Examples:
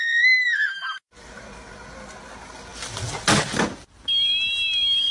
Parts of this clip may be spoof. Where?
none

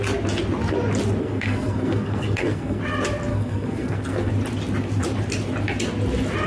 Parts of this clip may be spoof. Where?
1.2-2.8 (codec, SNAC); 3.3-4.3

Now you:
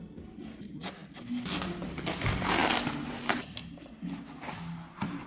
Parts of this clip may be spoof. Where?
none